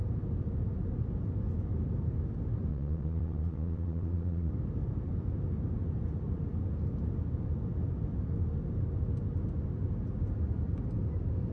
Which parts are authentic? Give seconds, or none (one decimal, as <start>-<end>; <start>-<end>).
0.0-2.7; 4.5-11.5